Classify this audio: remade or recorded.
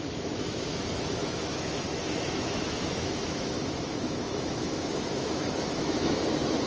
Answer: remade